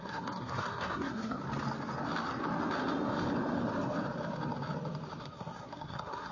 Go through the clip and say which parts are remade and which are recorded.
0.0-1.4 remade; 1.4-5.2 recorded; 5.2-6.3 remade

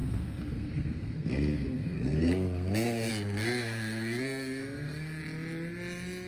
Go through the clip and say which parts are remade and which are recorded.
0.0-5.2 remade; 5.2-6.3 recorded

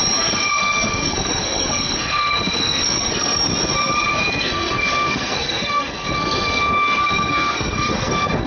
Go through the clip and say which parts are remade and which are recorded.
0.0-0.6 recorded; 0.6-3.5 remade; 3.5-4.3 recorded; 4.3-8.5 remade

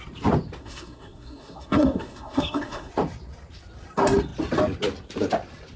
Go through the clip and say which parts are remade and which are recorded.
0.0-0.6 recorded; 0.6-2.9 remade; 2.9-5.8 recorded